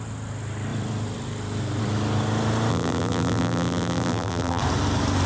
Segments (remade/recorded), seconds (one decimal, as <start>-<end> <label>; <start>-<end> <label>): 0.0-2.7 recorded; 2.7-4.6 remade; 4.6-5.3 recorded